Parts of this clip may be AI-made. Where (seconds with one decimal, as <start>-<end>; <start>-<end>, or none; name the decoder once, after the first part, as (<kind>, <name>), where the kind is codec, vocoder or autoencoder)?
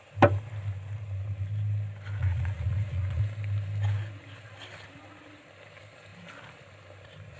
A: 2.2-3.2 (vocoder, Vocos)